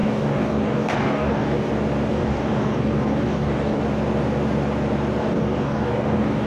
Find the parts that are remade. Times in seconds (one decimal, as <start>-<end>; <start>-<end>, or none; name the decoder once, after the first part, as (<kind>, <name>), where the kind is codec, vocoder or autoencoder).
0.0-1.7 (codec, DAC); 2.1-3.8; 5.2-6.5